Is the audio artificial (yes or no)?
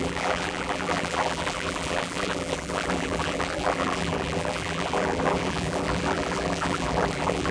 yes